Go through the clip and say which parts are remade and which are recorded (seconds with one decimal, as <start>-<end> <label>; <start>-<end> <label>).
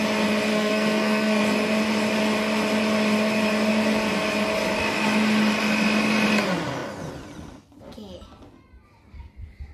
0.0-0.5 recorded; 0.5-1.4 remade; 1.4-9.7 recorded